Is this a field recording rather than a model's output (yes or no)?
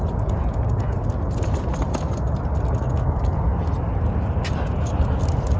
yes